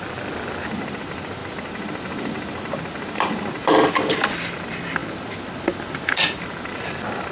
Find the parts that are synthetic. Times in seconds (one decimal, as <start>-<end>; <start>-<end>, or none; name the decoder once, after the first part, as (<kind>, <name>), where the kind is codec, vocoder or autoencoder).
1.4-3.6 (vocoder, BigVGAN v2)